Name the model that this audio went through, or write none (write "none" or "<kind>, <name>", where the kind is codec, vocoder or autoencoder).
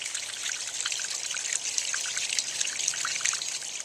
none